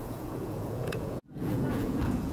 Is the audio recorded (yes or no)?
no